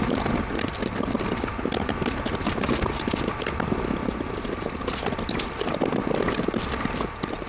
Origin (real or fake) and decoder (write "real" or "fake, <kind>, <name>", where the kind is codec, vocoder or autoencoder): real